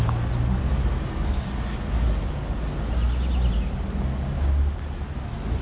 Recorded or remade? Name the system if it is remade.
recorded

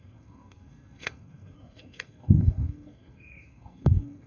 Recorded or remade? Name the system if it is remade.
remade, codec, SNAC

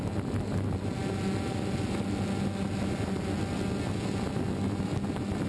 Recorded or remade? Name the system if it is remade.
recorded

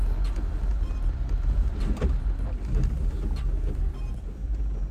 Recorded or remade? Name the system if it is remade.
recorded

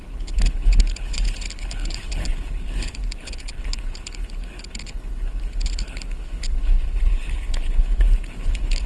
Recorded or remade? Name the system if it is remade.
remade, codec, HILCodec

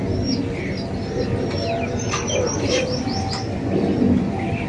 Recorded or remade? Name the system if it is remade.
recorded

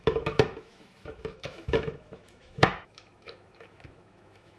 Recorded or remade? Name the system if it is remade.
remade, autoencoder, DAC-VAE